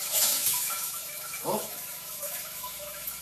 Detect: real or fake fake